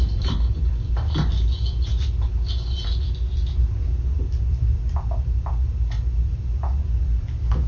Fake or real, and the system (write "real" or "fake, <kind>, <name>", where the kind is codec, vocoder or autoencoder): real